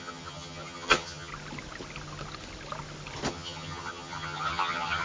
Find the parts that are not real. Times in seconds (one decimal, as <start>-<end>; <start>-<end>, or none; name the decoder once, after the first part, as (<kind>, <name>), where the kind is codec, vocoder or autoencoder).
0.0-1.3 (vocoder, HiFi-GAN); 3.3-5.0